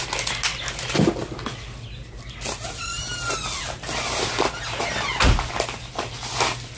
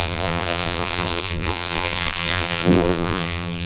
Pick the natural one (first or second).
first